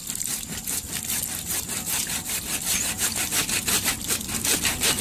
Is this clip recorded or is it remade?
recorded